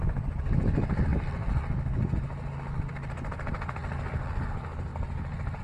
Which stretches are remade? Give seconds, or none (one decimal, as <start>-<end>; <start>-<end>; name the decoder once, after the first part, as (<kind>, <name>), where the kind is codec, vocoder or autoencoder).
0.0-1.1 (vocoder, BigVGAN v2); 2.8-3.8; 4.4-4.9